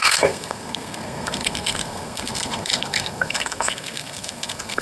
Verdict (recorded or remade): remade